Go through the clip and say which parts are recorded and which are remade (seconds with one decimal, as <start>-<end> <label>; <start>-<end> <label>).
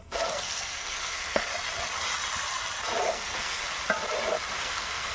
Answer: 0.0-1.5 remade; 1.5-3.1 recorded; 3.1-3.6 remade; 3.6-4.6 recorded; 4.6-5.1 remade